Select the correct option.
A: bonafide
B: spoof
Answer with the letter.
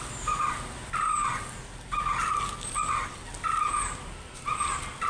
A